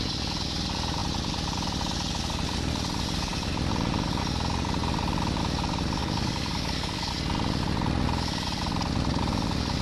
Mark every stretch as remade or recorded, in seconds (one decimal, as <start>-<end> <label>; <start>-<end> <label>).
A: 0.0-6.0 recorded; 6.0-7.1 remade; 7.1-9.8 recorded